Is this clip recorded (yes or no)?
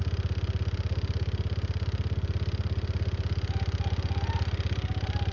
yes